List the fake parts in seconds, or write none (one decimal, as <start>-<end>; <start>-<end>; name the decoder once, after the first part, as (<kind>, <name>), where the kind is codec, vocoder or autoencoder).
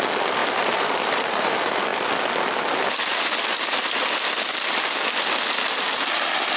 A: 0.4-1.5 (vocoder, BigVGAN v2)